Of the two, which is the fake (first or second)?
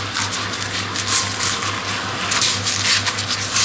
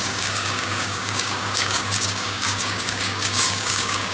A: second